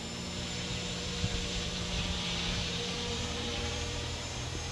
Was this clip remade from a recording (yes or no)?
yes